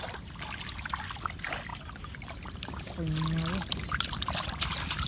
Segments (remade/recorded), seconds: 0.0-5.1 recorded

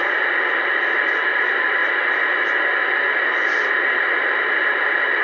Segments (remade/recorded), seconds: 0.0-1.2 recorded; 1.2-1.8 remade; 1.8-4.0 recorded; 4.0-5.2 remade

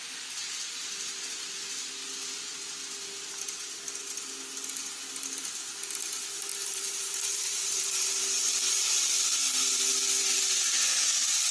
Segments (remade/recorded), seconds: 0.0-6.5 recorded; 6.5-8.2 remade; 8.2-11.5 recorded

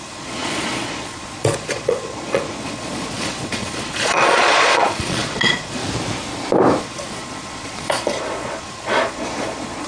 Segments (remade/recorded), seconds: 0.0-5.8 remade; 5.8-6.8 recorded; 6.8-9.9 remade

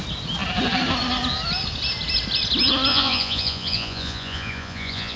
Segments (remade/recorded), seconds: 0.0-2.9 recorded; 2.9-5.2 remade

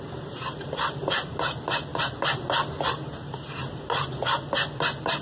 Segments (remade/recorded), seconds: 0.0-5.2 recorded